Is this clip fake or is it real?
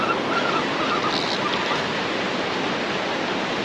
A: real